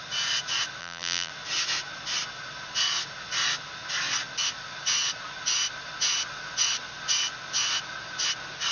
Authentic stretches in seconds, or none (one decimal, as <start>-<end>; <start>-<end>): 0.0-0.8; 1.3-8.7